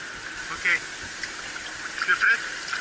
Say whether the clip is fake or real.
real